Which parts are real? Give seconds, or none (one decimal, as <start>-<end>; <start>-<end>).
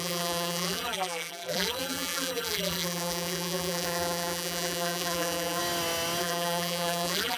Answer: 5.6-6.2